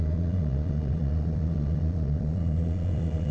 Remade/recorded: remade